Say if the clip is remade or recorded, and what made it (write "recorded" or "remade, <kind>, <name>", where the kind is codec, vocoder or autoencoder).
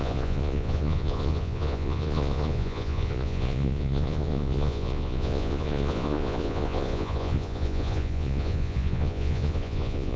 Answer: remade, vocoder, Vocos